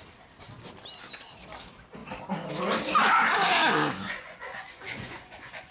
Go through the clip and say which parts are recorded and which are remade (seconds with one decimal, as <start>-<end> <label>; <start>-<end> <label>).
0.0-4.0 recorded; 4.0-5.7 remade